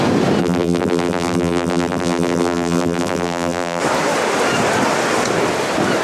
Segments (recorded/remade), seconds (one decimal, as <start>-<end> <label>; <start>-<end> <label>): 0.0-0.4 recorded; 0.4-3.8 remade; 3.8-6.0 recorded